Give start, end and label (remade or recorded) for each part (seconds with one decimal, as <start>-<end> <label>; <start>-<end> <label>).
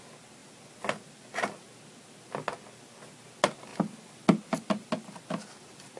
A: 0.0-6.0 recorded